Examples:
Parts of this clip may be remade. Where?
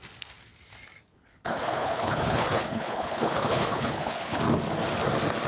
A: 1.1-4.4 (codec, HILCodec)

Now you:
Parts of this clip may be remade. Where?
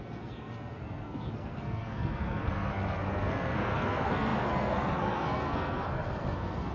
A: 0.0-6.7 (codec, SNAC)